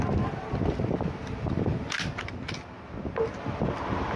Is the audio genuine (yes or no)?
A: yes